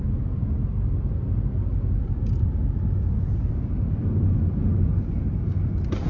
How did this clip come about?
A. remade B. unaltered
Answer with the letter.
B